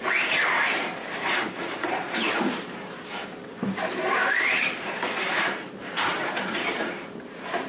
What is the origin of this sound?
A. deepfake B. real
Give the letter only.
A